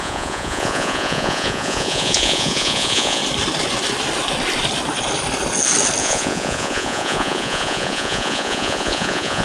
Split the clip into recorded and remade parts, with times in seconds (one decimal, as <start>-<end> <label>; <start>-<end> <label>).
0.0-3.2 remade; 3.2-6.0 recorded; 6.0-9.4 remade